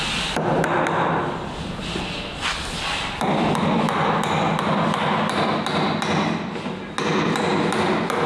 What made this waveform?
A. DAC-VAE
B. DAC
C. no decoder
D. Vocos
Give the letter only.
C